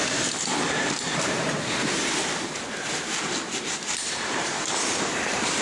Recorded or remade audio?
remade